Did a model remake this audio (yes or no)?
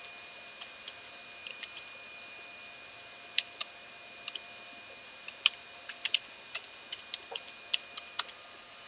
no